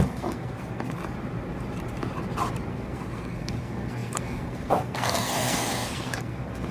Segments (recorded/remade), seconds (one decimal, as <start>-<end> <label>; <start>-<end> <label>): 0.0-1.0 remade; 1.0-2.7 recorded; 2.7-6.7 remade

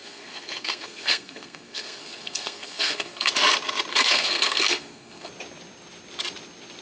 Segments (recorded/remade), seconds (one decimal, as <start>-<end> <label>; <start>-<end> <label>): 0.0-3.3 remade; 3.3-3.9 recorded; 3.9-5.3 remade; 5.3-6.8 recorded

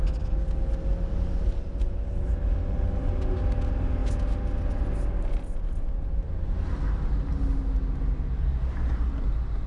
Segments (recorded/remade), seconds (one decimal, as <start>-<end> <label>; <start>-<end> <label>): 0.0-9.7 recorded

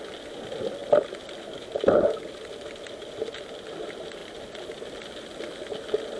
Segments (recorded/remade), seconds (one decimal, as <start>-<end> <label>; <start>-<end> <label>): 0.0-6.2 recorded

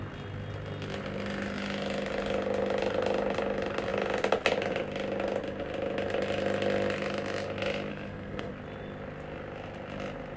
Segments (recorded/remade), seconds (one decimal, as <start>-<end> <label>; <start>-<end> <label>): 0.0-7.9 recorded; 7.9-8.5 remade; 8.5-10.4 recorded

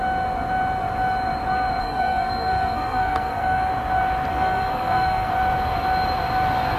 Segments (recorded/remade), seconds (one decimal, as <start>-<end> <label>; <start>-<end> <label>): 0.0-1.8 recorded; 1.8-3.7 remade; 3.7-4.3 recorded; 4.3-5.3 remade; 5.3-6.8 recorded